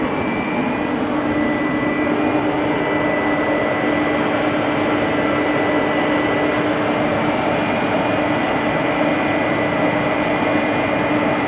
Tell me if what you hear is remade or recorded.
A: recorded